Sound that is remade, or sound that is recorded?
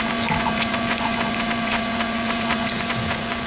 remade